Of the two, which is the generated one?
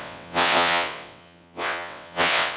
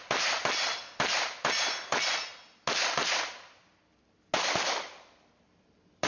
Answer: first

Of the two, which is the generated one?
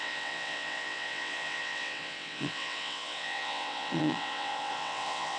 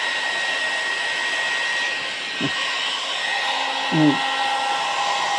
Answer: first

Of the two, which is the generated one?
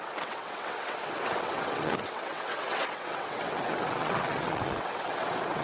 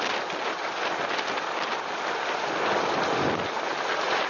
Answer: first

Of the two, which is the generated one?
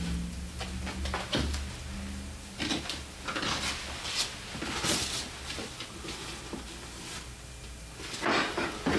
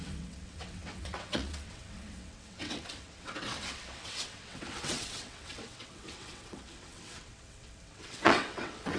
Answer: second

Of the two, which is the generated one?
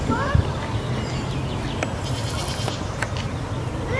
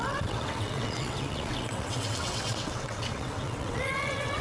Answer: second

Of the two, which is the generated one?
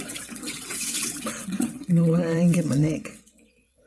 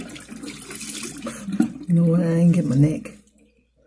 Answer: first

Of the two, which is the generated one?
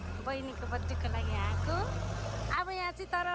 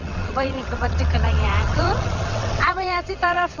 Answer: second